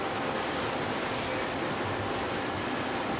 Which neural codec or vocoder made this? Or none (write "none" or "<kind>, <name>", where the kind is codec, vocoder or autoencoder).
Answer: none